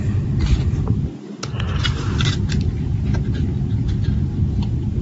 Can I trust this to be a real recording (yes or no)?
no